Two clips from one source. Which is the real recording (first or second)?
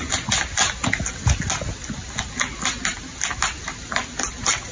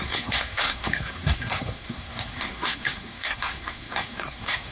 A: first